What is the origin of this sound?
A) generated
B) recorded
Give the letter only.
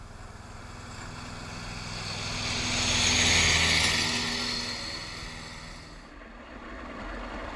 B